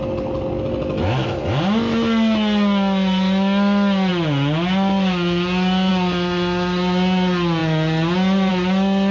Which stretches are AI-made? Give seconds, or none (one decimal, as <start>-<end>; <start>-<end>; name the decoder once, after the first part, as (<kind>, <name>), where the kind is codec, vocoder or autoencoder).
none